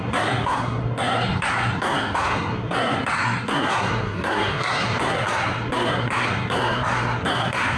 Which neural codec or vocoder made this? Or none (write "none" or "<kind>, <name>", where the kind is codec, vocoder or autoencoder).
codec, SNAC